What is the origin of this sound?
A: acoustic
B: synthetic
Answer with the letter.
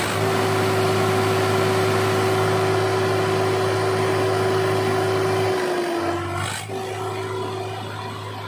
A